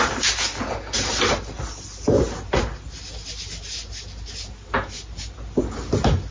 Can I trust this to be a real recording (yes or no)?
yes